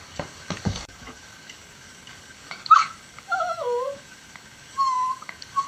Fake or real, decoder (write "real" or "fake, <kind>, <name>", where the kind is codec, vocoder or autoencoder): fake, codec, DAC